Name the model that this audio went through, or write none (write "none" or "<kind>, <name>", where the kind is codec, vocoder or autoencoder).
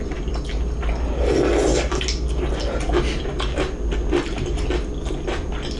none